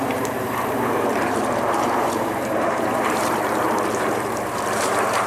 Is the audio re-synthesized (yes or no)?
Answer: yes